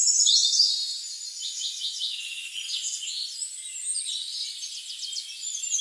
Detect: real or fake real